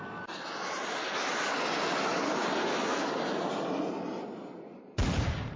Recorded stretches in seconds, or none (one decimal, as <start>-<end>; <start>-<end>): 0.0-5.6